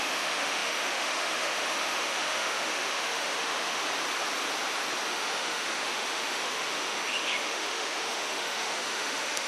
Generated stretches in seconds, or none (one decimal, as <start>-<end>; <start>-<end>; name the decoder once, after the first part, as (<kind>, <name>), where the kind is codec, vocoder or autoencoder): 0.0-3.8 (autoencoder, DAC-VAE); 5.1-9.5